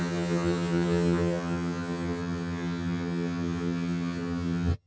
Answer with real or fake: fake